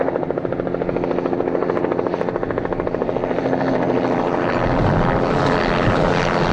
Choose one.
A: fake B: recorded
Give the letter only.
B